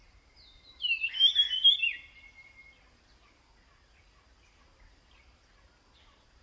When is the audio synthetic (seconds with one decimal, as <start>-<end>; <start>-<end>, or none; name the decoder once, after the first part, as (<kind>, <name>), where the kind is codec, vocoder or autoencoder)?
none